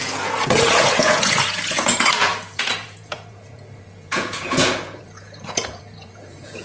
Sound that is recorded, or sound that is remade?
remade